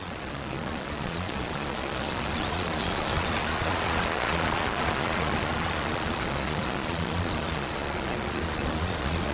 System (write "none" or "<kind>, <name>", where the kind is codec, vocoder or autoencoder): vocoder, Vocos